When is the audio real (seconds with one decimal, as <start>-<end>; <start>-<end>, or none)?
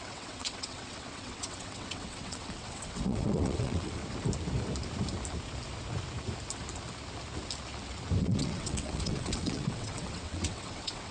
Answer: 4.0-8.2